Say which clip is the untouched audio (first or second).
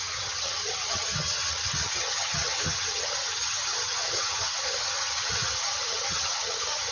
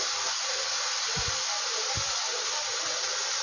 second